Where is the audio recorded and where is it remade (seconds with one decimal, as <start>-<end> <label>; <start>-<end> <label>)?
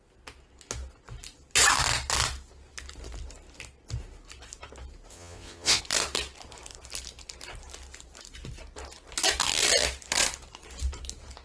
0.0-5.1 recorded; 5.1-5.8 remade; 5.8-11.4 recorded